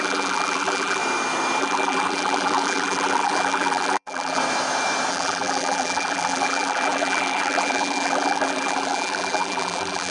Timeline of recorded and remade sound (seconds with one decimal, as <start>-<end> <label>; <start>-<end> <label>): 0.0-1.0 remade; 1.0-1.6 recorded; 1.6-4.4 remade; 4.4-5.1 recorded; 5.1-10.1 remade